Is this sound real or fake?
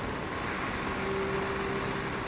real